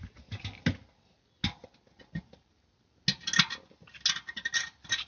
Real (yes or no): yes